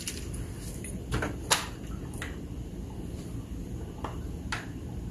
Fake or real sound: real